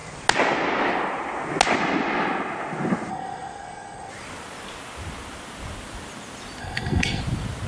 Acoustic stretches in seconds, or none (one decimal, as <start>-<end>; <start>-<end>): 0.0-3.1; 4.1-6.6; 7.2-7.7